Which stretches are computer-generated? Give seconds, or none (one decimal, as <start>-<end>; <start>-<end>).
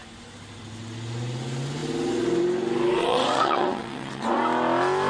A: 3.0-4.4